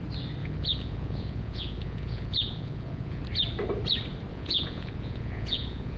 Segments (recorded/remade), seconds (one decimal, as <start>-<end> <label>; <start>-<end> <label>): 0.0-0.4 recorded; 0.4-3.2 remade; 3.2-4.3 recorded; 4.3-6.0 remade